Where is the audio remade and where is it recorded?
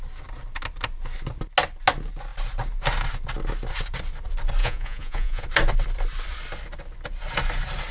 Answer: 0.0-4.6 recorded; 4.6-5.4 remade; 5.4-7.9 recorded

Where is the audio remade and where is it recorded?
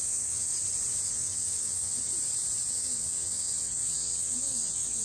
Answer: 0.0-0.5 remade; 0.5-1.1 recorded; 1.1-2.1 remade; 2.1-2.7 recorded; 2.7-5.0 remade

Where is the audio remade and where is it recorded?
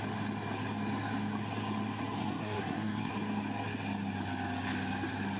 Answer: 0.0-2.2 recorded; 2.2-3.1 remade; 3.1-5.4 recorded